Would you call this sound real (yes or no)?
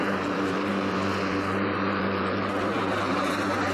no